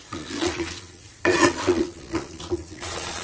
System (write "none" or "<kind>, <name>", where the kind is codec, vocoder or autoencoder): vocoder, Vocos